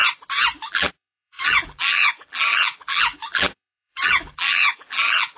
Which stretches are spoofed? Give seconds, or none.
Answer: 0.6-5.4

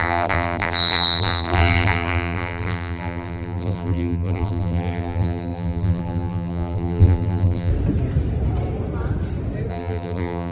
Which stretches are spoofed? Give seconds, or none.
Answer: 0.0-7.7; 9.7-10.5

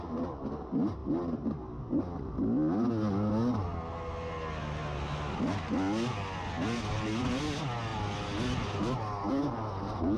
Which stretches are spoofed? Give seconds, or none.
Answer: 1.0-2.0

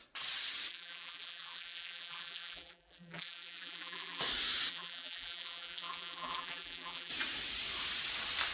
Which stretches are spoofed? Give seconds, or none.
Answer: 0.7-4.2; 4.7-7.1

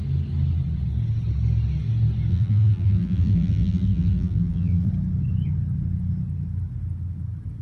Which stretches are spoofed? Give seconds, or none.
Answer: 2.3-4.9

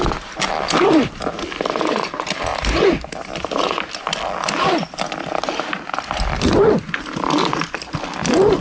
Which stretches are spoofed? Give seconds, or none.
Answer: 2.5-3.6

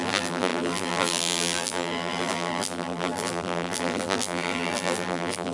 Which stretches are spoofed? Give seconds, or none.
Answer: 0.0-5.5